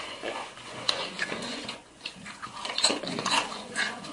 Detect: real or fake fake